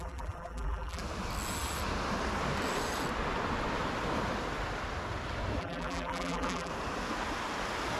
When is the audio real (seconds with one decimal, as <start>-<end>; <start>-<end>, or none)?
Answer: 1.0-5.6; 6.7-8.0